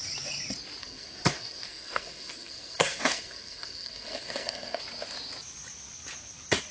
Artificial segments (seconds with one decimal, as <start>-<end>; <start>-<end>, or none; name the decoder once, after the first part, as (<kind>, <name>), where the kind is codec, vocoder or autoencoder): 0.8-4.8 (codec, SNAC)